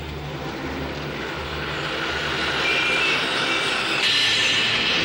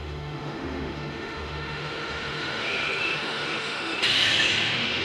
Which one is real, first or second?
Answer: first